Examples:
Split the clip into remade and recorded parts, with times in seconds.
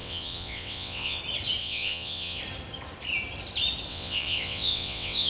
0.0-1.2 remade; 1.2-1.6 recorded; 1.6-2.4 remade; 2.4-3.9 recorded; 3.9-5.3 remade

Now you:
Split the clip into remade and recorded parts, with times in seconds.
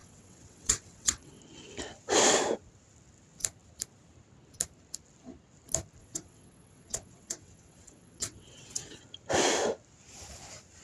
0.0-1.4 remade; 1.4-6.0 recorded; 6.0-9.0 remade; 9.0-10.8 recorded